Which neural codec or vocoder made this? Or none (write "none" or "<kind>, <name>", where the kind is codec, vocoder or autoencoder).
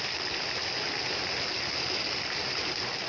none